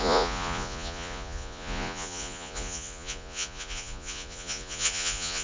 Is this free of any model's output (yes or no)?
no